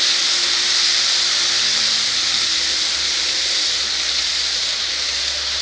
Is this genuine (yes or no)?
yes